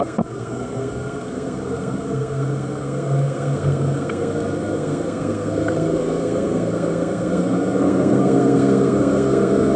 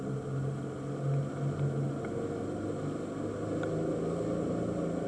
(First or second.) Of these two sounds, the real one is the second